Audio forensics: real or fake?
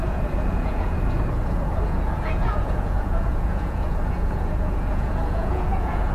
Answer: fake